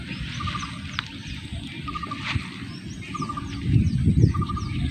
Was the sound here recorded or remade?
recorded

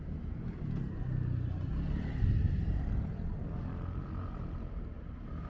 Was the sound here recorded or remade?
recorded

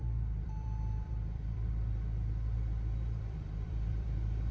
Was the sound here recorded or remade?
remade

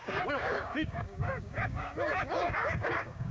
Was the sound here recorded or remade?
remade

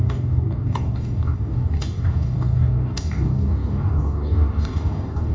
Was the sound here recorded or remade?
remade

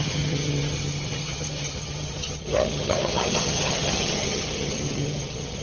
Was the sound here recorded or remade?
remade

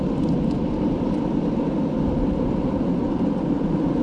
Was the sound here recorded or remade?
recorded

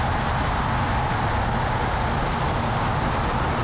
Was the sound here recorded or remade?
recorded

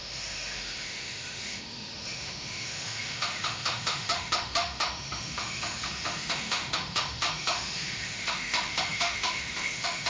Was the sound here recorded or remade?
remade